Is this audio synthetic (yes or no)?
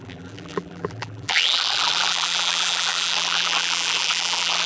yes